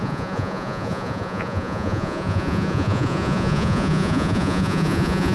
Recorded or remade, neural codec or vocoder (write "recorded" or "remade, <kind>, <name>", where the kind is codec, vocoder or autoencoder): remade, vocoder, Vocos